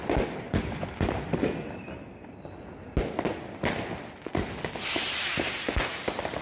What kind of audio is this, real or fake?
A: real